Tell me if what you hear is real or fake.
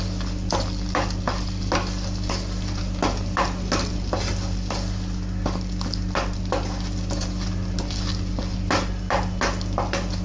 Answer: real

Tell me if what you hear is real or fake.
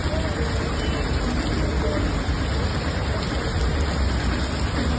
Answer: real